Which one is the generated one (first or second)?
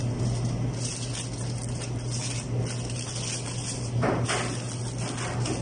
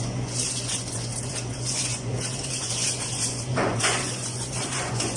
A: second